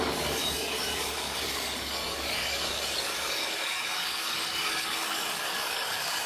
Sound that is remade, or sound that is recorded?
remade